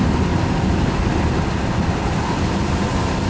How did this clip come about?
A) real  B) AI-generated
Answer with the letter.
A